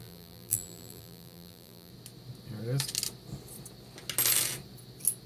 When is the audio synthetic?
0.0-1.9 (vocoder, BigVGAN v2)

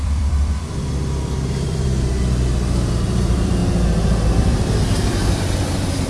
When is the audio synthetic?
0.0-3.6 (vocoder, BigVGAN v2); 4.3-6.1

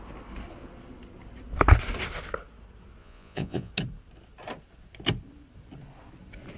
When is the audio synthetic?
3.0-3.7 (vocoder, Vocos)

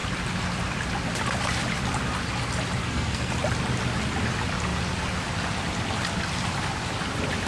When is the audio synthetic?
2.8-3.3 (codec, SNAC)

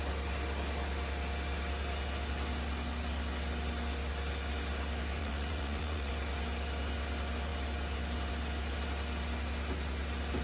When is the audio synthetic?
5.2-6.1 (vocoder, Vocos)

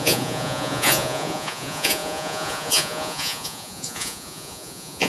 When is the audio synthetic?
0.0-5.1 (vocoder, Vocos)